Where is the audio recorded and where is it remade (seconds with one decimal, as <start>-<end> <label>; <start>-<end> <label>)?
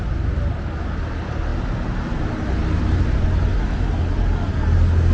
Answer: 0.0-5.1 recorded